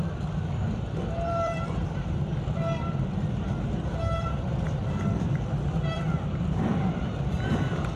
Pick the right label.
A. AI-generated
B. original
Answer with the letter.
A